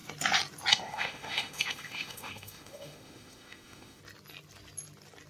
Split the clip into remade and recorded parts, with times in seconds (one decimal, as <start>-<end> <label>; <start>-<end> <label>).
0.0-0.7 recorded; 0.7-4.0 remade; 4.0-5.3 recorded